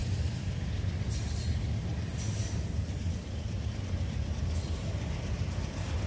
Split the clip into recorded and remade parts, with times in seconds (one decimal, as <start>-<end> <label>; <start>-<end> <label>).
0.0-6.1 recorded